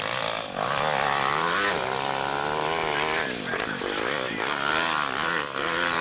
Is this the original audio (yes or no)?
yes